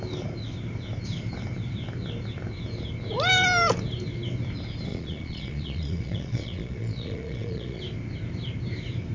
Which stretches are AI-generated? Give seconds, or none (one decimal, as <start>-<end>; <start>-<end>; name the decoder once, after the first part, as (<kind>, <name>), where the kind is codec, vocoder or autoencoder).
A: 4.9-7.8 (vocoder, Vocos)